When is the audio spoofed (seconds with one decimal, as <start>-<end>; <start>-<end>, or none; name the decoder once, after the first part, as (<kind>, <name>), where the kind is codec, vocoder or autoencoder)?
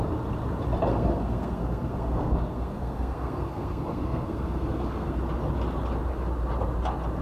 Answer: 0.9-5.2 (codec, SNAC)